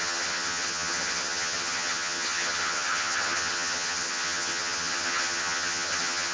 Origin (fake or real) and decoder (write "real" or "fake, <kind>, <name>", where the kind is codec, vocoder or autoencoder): fake, vocoder, HiFi-GAN